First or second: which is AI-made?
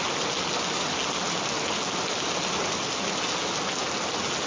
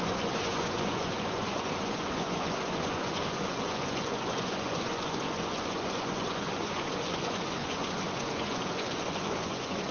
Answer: second